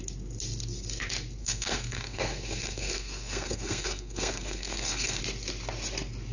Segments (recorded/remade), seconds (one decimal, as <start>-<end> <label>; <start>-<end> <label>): 0.0-1.4 recorded; 1.4-5.2 remade; 5.2-6.3 recorded